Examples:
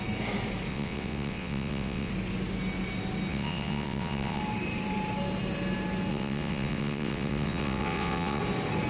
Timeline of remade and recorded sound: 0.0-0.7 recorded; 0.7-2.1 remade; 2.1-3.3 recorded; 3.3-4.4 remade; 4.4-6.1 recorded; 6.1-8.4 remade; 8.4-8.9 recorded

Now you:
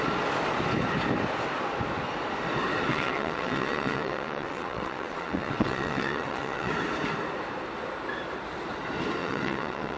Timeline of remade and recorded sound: 0.0-2.9 recorded; 2.9-6.7 remade; 6.7-9.2 recorded; 9.2-10.0 remade

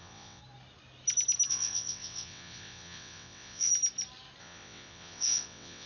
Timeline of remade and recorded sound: 0.0-0.4 remade; 0.4-1.5 recorded; 1.5-3.7 remade; 3.7-4.4 recorded; 4.4-5.9 remade

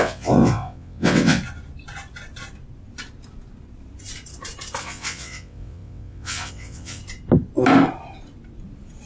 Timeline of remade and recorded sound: 0.0-1.4 remade; 1.4-4.8 recorded; 4.8-7.0 remade; 7.0-9.1 recorded

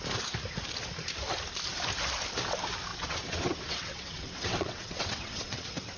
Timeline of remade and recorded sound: 0.0-2.9 recorded; 2.9-6.0 remade